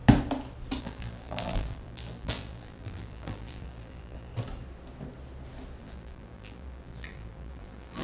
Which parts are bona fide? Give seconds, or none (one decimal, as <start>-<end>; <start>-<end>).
0.0-0.8; 4.3-5.8